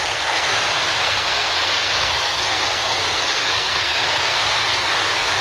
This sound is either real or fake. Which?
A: fake